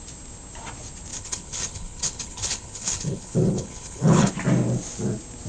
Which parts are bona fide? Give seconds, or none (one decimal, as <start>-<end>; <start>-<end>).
0.0-1.1; 4.3-5.5